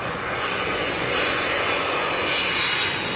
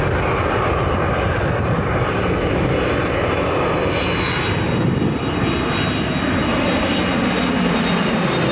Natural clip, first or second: second